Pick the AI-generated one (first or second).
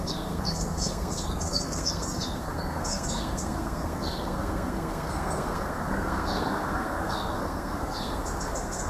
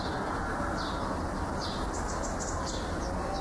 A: first